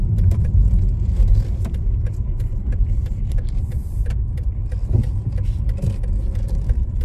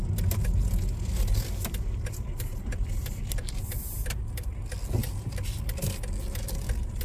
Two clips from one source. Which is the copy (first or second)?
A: first